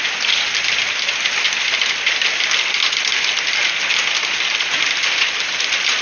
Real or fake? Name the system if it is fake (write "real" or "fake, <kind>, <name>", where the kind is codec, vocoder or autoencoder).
real